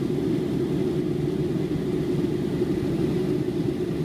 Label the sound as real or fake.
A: real